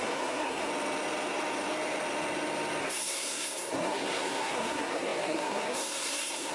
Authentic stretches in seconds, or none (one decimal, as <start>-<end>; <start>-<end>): 0.7-2.8